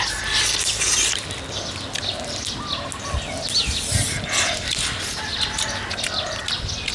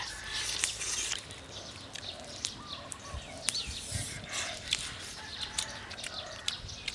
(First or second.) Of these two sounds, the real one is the first